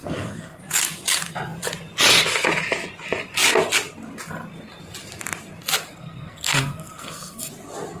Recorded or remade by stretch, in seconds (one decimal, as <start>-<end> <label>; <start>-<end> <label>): 0.0-0.6 remade; 0.6-5.9 recorded; 5.9-7.5 remade; 7.5-8.0 recorded